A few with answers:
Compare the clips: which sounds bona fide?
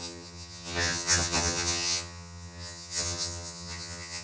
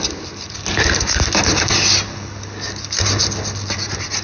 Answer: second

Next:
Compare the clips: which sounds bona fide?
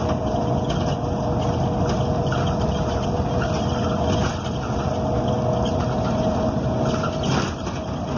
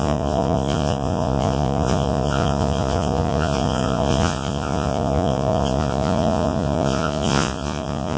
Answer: first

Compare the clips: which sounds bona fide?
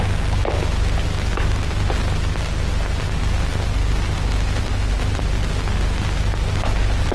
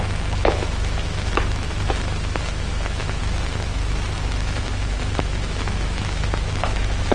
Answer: first